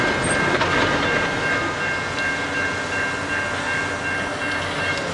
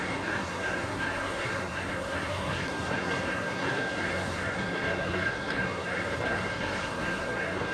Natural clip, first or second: first